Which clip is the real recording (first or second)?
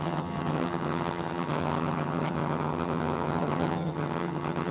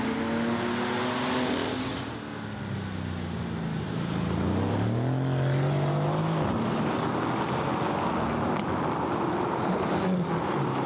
second